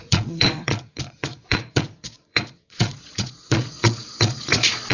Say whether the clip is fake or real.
fake